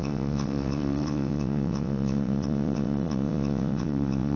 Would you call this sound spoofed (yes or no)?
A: yes